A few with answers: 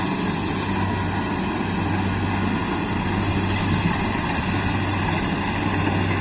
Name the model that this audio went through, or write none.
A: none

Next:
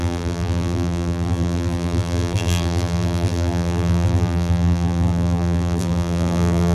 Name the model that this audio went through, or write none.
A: vocoder, BigVGAN v2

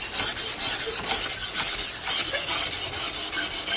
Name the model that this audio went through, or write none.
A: none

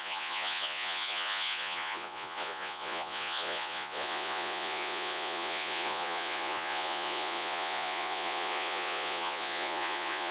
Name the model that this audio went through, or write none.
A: vocoder, Vocos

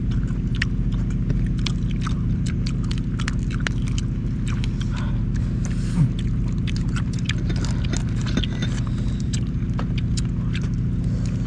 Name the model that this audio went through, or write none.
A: none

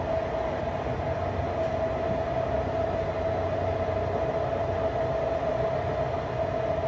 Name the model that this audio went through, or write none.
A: none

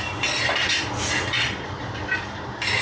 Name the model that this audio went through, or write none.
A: none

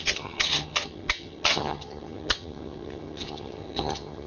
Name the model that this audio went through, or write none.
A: vocoder, HiFi-GAN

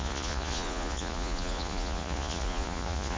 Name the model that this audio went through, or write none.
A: vocoder, Vocos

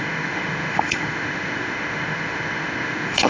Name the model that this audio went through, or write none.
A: autoencoder, DAC-VAE